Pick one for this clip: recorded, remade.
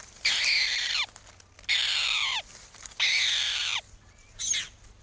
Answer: recorded